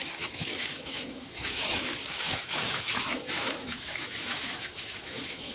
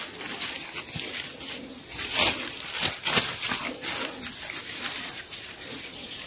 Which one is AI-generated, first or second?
first